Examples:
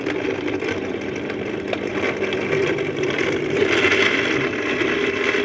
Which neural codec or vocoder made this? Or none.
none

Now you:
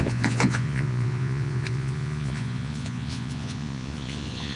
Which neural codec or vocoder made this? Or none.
vocoder, Vocos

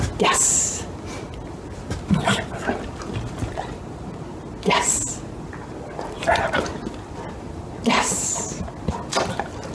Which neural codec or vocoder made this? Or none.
none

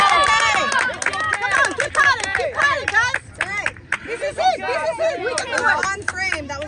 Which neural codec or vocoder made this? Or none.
none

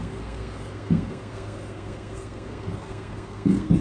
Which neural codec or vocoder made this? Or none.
codec, SNAC